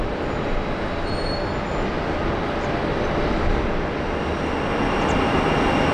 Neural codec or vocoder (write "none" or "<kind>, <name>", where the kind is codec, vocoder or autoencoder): none